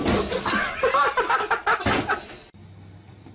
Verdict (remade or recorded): recorded